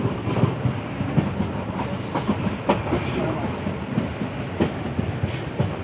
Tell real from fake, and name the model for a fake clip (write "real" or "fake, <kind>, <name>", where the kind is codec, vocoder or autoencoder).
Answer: real